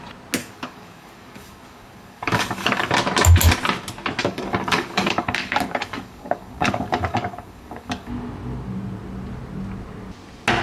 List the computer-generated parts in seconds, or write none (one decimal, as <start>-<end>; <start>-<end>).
0.4-2.9; 4.2-8.1